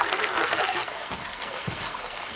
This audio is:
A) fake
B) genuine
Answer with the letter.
A